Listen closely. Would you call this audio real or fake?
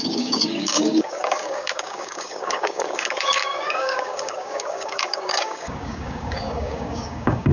fake